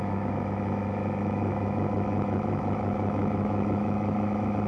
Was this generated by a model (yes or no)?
yes